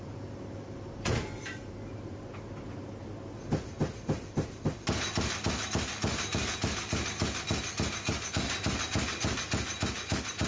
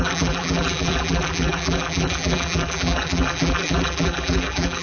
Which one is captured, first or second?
first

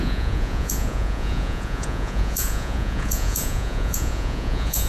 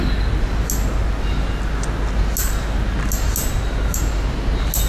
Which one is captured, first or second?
second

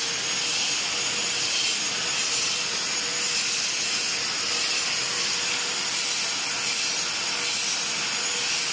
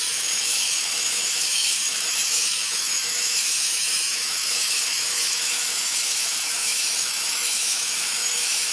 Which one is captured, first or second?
first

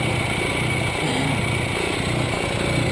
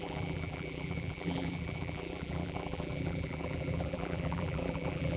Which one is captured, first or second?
first